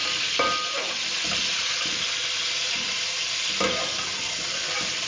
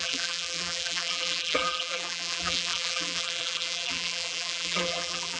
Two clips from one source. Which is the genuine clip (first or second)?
first